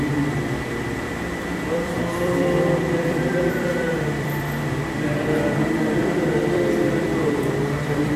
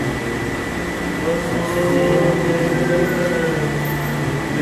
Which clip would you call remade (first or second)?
first